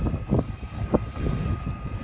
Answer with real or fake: fake